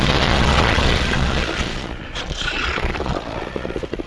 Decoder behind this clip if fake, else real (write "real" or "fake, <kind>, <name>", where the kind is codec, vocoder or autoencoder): fake, vocoder, Vocos